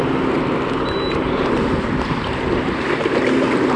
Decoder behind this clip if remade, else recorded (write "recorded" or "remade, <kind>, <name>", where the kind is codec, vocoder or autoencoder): recorded